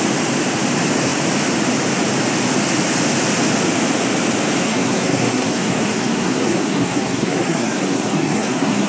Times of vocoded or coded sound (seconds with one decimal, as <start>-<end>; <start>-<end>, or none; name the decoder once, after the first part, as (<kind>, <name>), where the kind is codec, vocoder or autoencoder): 4.6-8.9 (codec, SNAC)

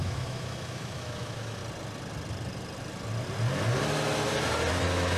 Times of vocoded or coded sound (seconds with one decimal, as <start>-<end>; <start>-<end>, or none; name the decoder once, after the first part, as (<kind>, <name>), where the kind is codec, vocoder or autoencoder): 0.0-1.6 (autoencoder, DAC-VAE); 4.7-5.2

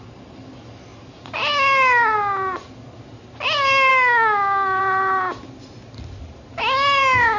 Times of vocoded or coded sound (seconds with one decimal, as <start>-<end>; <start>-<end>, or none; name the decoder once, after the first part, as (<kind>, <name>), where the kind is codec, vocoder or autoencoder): 3.9-4.8 (codec, DAC)

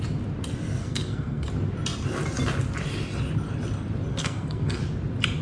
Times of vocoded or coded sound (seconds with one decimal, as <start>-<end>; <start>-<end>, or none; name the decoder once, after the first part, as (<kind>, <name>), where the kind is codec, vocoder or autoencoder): 0.8-1.5 (codec, SNAC); 4.1-4.8

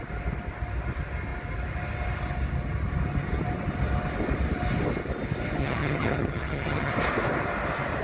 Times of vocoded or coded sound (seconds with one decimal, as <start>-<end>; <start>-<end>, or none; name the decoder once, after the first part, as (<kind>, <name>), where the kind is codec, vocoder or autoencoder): 5.6-6.9 (vocoder, HiFi-GAN)

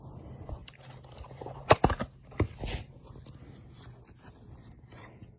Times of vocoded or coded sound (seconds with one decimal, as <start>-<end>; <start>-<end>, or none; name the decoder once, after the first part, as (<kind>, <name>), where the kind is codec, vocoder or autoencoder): 0.6-1.8 (vocoder, BigVGAN v2)

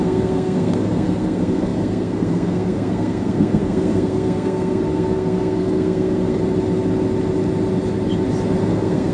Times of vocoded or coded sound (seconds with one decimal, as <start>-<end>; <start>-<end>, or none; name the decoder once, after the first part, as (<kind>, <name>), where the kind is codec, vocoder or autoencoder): 0.0-6.4 (codec, SNAC); 8.6-9.1